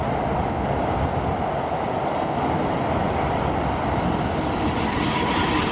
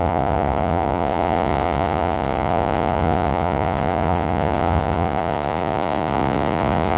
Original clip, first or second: first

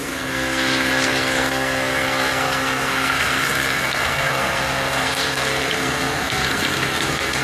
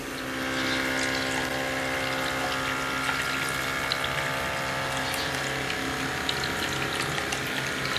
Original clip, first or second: second